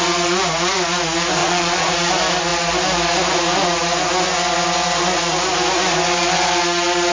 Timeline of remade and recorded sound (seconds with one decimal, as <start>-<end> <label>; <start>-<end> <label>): 0.0-1.4 recorded; 1.4-1.9 remade; 1.9-7.1 recorded